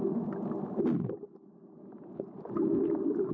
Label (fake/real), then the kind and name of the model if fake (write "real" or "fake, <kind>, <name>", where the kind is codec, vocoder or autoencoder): real